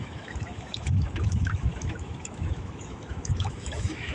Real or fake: fake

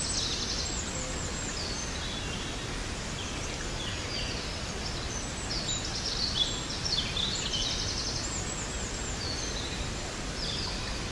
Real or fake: real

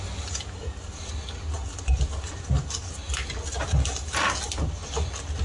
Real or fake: real